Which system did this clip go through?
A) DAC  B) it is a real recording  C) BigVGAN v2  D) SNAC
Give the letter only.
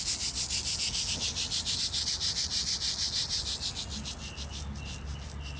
B